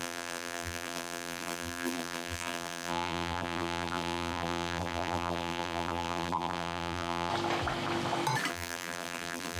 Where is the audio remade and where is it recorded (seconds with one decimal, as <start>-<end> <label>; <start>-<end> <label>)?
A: 0.0-7.3 remade; 7.3-8.5 recorded; 8.5-9.6 remade